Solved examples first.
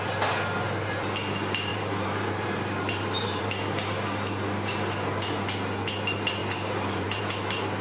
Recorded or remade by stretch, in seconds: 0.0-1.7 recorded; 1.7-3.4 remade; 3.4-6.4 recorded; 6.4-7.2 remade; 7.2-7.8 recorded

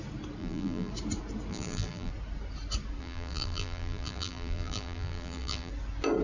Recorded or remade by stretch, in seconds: 0.0-0.4 recorded; 0.4-0.9 remade; 0.9-1.5 recorded; 1.5-2.1 remade; 2.1-3.0 recorded; 3.0-5.7 remade; 5.7-6.2 recorded

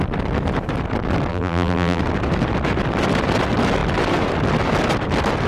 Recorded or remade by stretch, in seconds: 0.0-1.3 recorded; 1.3-2.0 remade; 2.0-5.5 recorded

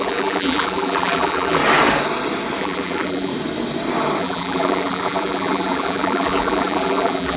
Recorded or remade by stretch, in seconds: 0.0-1.6 remade; 1.6-2.6 recorded; 2.6-3.3 remade; 3.3-4.2 recorded; 4.2-7.4 remade

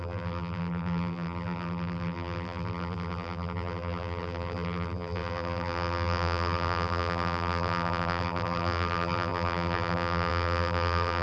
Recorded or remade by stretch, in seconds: 0.0-11.2 remade